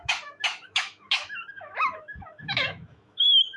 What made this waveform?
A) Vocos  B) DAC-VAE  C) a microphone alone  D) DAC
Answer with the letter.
B